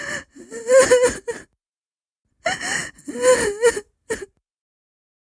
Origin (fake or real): real